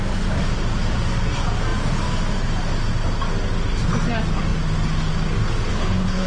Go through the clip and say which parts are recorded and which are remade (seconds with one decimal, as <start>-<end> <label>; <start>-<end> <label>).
0.0-5.7 recorded; 5.7-6.3 remade

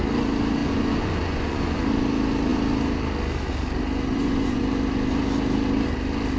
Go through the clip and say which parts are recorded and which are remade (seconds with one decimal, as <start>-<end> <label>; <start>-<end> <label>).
0.0-0.6 recorded; 0.6-1.8 remade; 1.8-4.1 recorded; 4.1-4.6 remade; 4.6-6.4 recorded

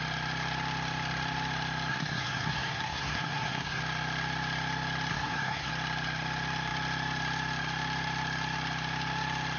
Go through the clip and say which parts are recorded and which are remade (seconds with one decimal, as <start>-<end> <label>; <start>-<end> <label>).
0.0-1.9 recorded; 1.9-3.8 remade; 3.8-5.1 recorded; 5.1-5.7 remade; 5.7-9.6 recorded

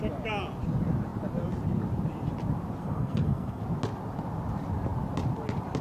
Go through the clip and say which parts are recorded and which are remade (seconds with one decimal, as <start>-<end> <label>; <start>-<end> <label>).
0.0-2.8 recorded; 2.8-3.6 remade; 3.6-5.8 recorded